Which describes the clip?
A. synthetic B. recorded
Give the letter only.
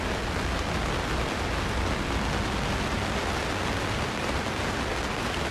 B